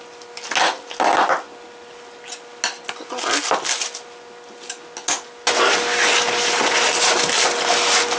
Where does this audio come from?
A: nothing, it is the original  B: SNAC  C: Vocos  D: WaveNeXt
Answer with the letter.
A